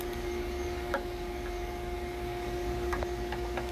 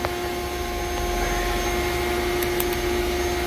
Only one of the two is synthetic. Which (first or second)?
first